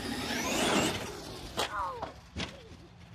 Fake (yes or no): no